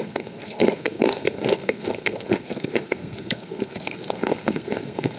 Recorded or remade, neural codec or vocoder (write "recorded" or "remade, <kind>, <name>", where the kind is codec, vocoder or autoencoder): remade, codec, SNAC